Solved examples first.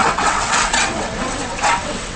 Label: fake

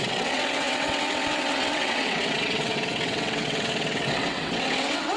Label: fake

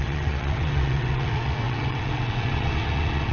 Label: fake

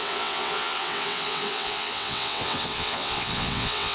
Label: fake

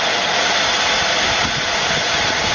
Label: real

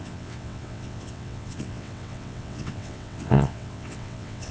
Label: fake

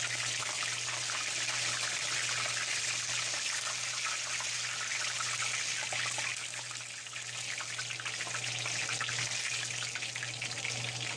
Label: real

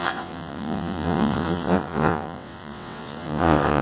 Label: fake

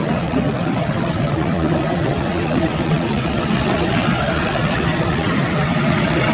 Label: fake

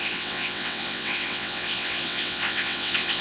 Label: fake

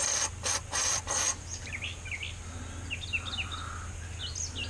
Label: real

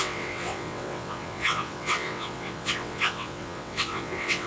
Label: fake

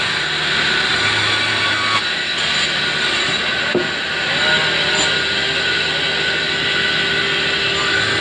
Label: real